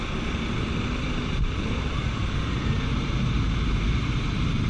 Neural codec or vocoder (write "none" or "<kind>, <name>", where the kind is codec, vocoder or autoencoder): vocoder, BigVGAN v2